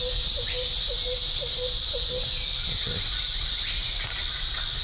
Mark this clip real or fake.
real